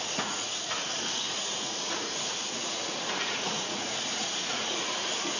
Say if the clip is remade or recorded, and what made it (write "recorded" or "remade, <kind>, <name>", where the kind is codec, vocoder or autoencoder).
remade, vocoder, Vocos